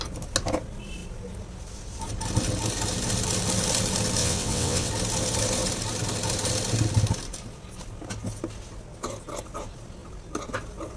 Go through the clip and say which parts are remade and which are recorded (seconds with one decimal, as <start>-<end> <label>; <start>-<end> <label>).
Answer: 0.0-4.2 recorded; 4.2-4.9 remade; 4.9-11.0 recorded